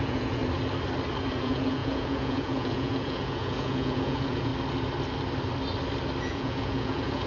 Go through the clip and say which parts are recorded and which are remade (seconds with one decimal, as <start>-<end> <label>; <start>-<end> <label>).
0.0-0.4 remade; 0.4-1.3 recorded; 1.3-4.5 remade; 4.5-6.2 recorded; 6.2-7.3 remade

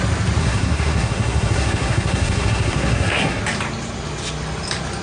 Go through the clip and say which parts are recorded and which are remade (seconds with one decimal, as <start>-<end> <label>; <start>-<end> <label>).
0.0-0.4 recorded; 0.4-3.4 remade; 3.4-5.0 recorded

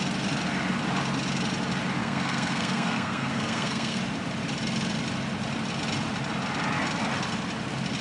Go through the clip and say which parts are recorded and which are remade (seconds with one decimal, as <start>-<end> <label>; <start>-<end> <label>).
0.0-2.0 recorded; 2.0-4.0 remade; 4.0-8.0 recorded

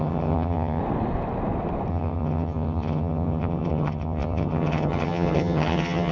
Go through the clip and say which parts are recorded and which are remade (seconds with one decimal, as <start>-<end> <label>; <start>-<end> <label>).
0.0-0.8 remade; 0.8-1.9 recorded; 1.9-6.1 remade

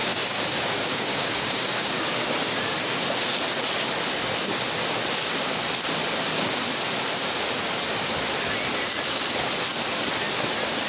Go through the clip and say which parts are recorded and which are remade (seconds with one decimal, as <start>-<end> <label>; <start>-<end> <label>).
0.0-1.9 remade; 1.9-10.9 recorded

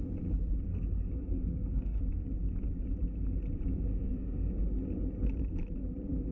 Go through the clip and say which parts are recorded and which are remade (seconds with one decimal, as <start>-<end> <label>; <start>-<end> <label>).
0.0-0.7 recorded; 0.7-2.0 remade; 2.0-3.9 recorded; 3.9-4.5 remade; 4.5-6.3 recorded

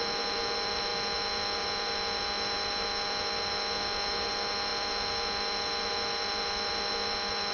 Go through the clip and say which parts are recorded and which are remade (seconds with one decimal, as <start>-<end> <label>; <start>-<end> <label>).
0.0-7.5 recorded